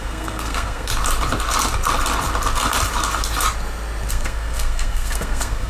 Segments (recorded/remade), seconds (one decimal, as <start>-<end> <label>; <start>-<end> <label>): 0.0-0.9 remade; 0.9-4.1 recorded; 4.1-5.7 remade